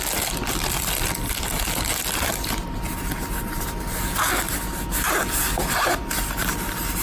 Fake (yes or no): no